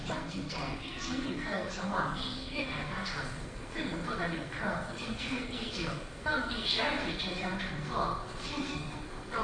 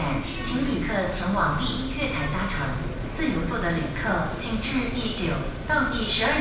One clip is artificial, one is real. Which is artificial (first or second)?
first